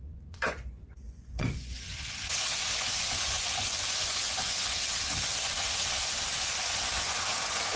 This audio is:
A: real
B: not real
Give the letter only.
B